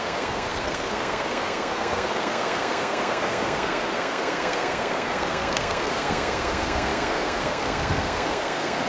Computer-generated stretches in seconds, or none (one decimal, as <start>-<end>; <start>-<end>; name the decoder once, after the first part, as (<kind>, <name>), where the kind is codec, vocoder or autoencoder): 0.0-8.9 (codec, SNAC)